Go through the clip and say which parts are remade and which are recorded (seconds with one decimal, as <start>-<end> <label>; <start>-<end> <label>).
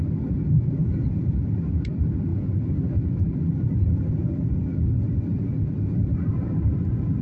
0.0-0.8 recorded; 0.8-1.4 remade; 1.4-2.3 recorded; 2.3-3.4 remade; 3.4-7.2 recorded